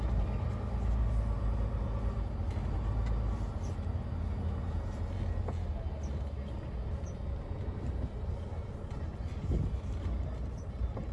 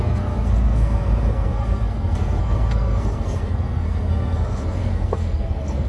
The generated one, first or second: second